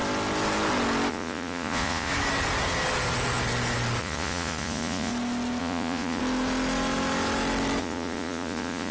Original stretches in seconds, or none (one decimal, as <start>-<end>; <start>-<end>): 0.0-1.1; 2.1-4.0; 5.1-5.6; 6.2-7.8